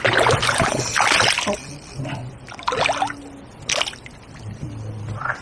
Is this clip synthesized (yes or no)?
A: no